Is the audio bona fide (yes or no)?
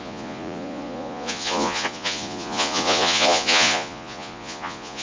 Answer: no